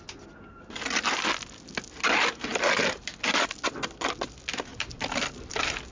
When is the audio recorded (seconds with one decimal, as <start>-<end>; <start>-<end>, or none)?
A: 0.0-4.7; 5.5-5.9